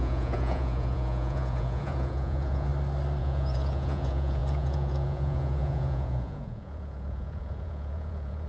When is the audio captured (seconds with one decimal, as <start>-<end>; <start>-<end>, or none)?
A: 2.7-3.2